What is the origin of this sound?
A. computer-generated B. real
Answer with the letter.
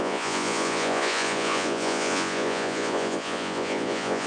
A